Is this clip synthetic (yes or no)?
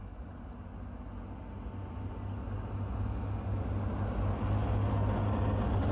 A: no